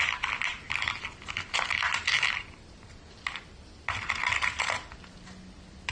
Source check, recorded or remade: recorded